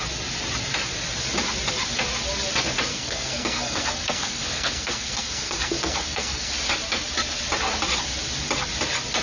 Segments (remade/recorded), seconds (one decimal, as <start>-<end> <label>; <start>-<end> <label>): 0.0-2.9 recorded; 2.9-6.5 remade; 6.5-9.2 recorded